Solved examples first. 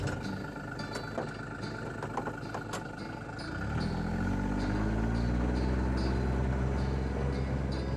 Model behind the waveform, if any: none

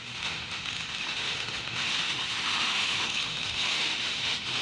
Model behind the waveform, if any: autoencoder, DAC-VAE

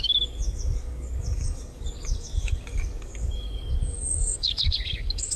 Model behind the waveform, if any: codec, DAC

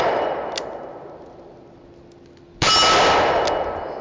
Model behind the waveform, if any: none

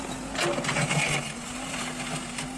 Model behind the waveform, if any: none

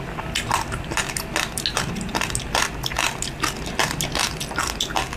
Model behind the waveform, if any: none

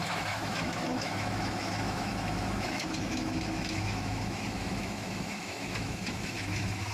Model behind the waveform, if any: autoencoder, DAC-VAE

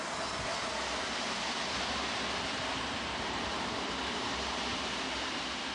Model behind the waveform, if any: none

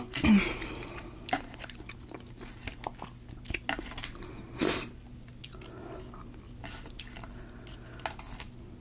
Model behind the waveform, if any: none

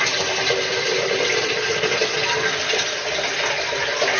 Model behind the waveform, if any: none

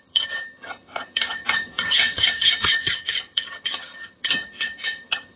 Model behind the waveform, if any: vocoder, HiFi-GAN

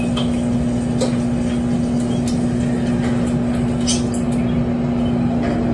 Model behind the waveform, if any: none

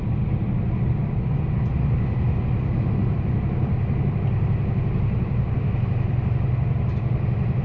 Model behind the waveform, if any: none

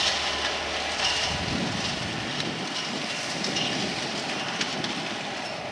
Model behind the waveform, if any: none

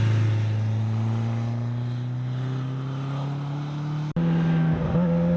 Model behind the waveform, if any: none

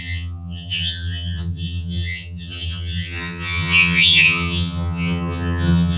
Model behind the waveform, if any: vocoder, HiFi-GAN